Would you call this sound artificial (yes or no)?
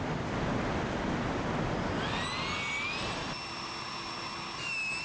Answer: no